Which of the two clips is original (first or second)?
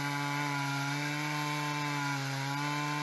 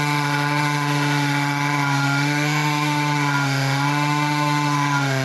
first